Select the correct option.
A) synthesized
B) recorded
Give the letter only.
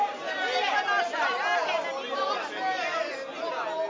B